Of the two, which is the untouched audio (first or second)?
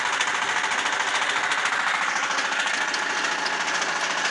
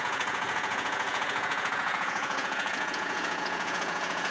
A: first